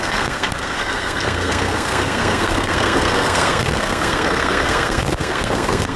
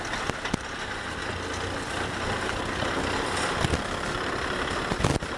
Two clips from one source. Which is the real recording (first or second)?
second